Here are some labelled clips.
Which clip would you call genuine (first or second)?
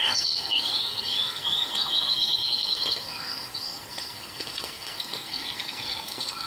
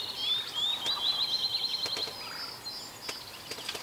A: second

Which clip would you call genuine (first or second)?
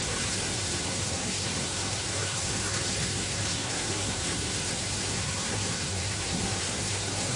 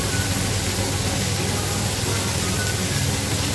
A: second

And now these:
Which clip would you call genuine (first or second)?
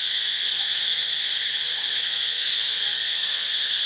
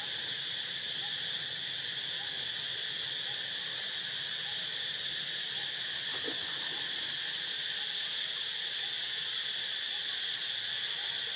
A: second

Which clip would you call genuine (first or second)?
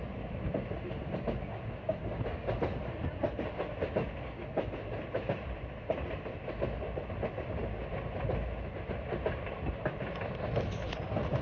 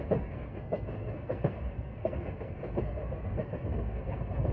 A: first